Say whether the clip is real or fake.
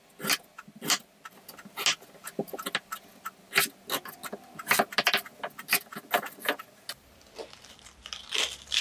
real